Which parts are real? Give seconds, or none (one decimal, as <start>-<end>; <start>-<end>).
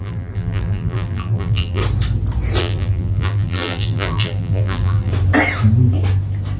1.8-2.6; 5.1-6.6